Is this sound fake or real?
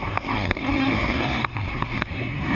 fake